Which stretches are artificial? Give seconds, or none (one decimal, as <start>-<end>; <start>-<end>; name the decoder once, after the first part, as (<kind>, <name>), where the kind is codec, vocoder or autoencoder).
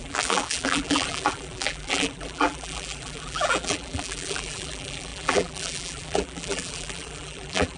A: 0.0-7.8 (vocoder, BigVGAN v2)